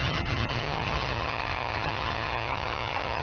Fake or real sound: fake